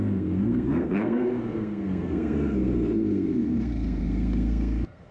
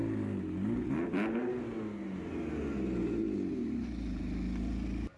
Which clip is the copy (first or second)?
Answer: first